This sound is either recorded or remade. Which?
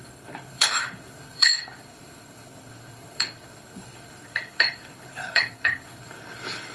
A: remade